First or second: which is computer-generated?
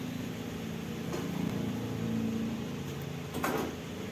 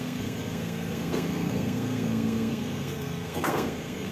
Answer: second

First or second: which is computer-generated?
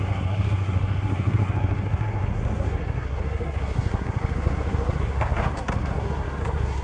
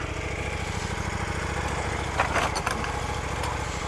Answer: first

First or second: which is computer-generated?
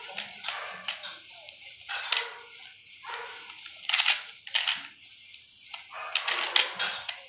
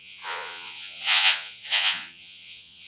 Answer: second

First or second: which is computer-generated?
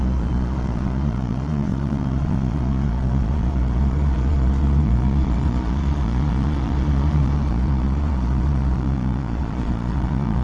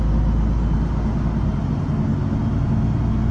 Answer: first